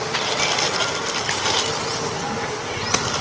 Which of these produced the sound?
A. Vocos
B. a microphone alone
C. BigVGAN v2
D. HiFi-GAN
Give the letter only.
B